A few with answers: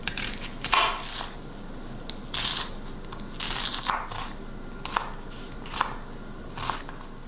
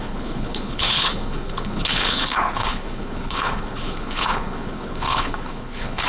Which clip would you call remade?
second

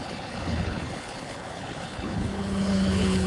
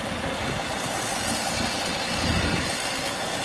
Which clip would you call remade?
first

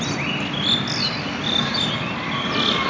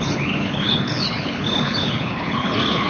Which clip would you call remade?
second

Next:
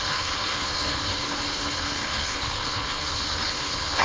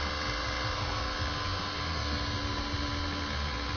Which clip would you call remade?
first